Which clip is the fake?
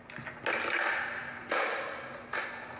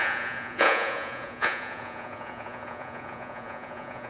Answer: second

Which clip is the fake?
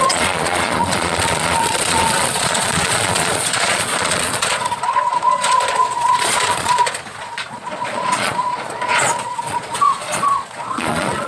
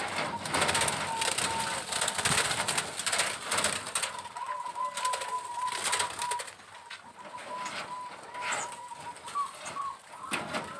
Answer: first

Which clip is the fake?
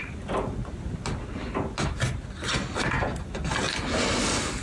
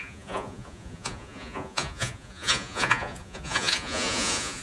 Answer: second